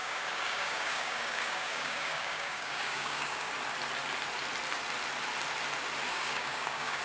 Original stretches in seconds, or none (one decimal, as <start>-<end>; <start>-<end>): 3.5-6.1